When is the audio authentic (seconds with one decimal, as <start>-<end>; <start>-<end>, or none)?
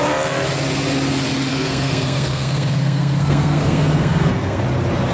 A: 0.0-1.5; 4.6-5.1